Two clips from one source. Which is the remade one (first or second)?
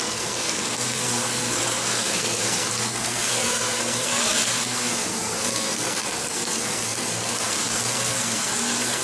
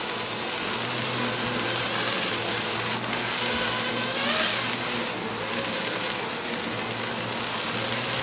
first